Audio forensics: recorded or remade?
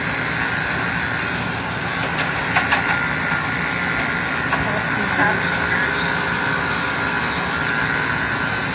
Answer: recorded